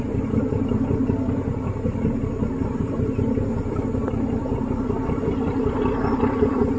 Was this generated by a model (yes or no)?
no